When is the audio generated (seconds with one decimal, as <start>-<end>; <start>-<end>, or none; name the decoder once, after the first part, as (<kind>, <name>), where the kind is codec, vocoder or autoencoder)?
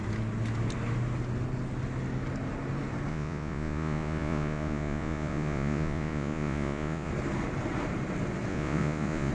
3.1-7.1 (vocoder, Vocos); 8.5-9.3